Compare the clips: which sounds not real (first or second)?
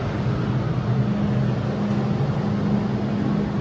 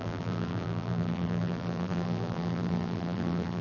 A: second